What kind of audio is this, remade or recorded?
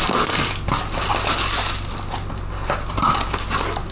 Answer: recorded